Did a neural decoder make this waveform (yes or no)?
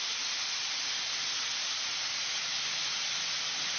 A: no